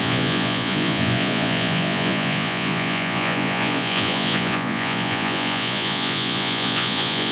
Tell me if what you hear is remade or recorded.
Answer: remade